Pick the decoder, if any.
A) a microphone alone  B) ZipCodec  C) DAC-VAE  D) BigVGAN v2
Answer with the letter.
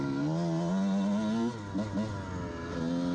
A